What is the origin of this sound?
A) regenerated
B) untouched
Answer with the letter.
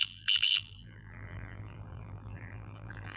A